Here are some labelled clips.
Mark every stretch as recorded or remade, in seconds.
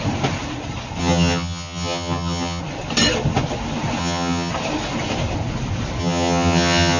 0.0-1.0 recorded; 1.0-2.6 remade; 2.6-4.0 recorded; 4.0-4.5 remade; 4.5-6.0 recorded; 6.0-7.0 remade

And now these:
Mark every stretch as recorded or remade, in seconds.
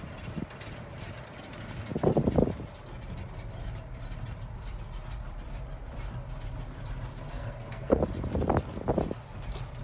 0.0-7.3 recorded; 7.3-8.0 remade; 8.0-9.8 recorded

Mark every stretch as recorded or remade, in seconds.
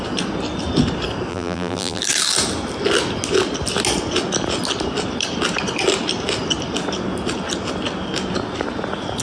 0.0-1.3 recorded; 1.3-2.0 remade; 2.0-9.2 recorded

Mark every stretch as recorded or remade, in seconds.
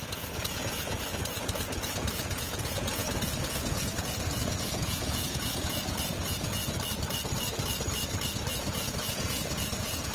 0.0-6.6 remade; 6.6-8.5 recorded; 8.5-10.1 remade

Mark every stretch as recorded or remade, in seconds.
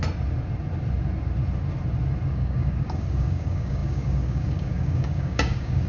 0.0-2.3 recorded; 2.3-5.9 remade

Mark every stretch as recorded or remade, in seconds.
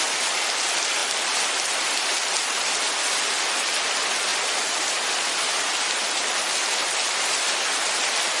0.0-8.4 recorded